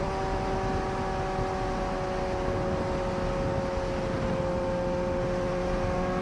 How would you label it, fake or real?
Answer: real